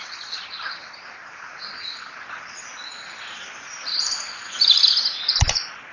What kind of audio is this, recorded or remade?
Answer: recorded